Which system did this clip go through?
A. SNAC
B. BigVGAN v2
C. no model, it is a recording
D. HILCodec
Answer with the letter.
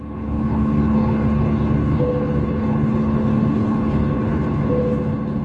D